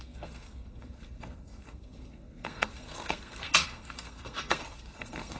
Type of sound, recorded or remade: remade